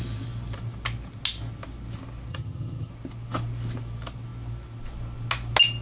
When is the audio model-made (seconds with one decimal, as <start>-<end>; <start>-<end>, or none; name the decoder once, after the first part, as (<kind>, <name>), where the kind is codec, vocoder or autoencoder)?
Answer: 2.3-2.9 (vocoder, HiFi-GAN)